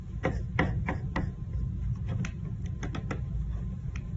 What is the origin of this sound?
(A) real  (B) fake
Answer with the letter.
A